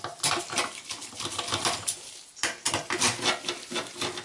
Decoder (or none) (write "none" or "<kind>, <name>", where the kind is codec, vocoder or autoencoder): none